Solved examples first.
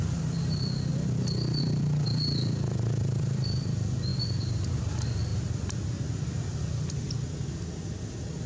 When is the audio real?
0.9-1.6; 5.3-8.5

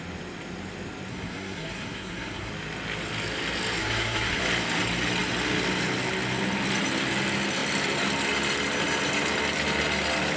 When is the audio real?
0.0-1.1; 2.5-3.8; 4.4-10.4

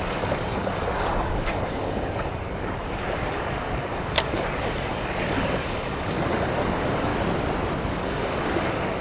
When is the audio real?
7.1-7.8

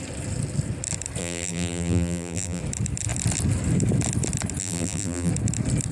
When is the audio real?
0.0-1.2; 2.6-4.6; 5.3-5.9

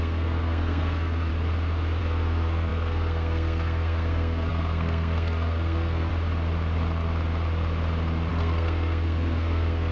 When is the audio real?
1.3-2.0; 6.1-8.3

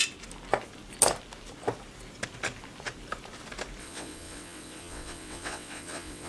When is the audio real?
0.0-3.8

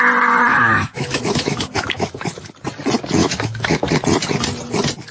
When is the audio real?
0.0-0.5; 2.5-3.2; 3.9-5.1